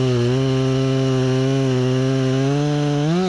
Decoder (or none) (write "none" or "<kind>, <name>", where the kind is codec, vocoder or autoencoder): none